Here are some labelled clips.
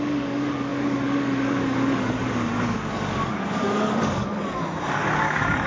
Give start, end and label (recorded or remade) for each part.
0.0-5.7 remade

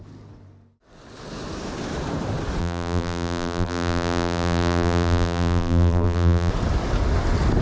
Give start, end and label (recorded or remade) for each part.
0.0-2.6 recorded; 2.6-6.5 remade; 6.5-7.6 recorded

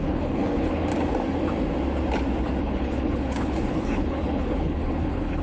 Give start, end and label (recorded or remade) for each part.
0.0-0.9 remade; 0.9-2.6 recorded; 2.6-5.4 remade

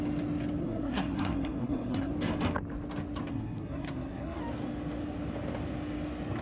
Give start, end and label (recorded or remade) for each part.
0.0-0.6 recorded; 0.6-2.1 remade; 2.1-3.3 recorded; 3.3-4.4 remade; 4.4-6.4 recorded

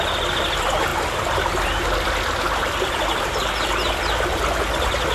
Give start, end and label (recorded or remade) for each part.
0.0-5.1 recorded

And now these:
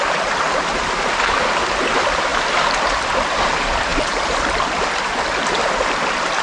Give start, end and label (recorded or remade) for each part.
0.0-6.4 remade

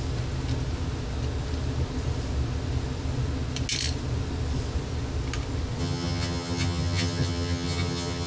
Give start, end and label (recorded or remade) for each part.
0.0-5.8 recorded; 5.8-8.3 remade